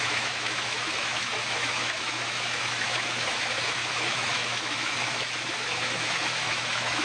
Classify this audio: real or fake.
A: fake